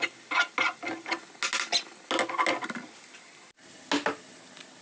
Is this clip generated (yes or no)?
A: no